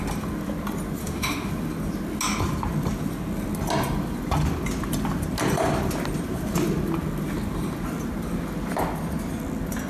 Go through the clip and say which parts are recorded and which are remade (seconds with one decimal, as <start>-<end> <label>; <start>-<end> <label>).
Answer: 0.0-1.0 recorded; 1.0-1.5 remade; 1.5-9.9 recorded